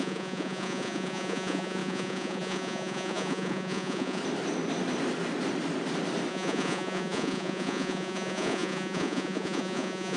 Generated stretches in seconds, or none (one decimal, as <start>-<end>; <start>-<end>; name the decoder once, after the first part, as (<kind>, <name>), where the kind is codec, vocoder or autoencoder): 0.0-4.2 (vocoder, Vocos); 6.3-10.2